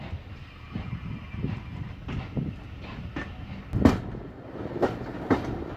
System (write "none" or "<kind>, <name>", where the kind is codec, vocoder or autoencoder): none